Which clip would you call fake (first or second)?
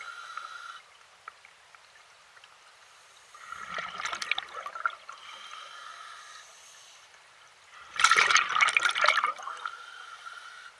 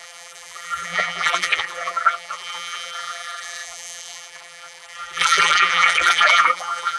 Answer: second